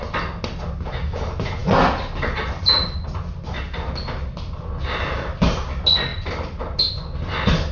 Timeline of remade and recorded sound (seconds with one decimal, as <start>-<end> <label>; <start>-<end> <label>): 0.0-7.7 recorded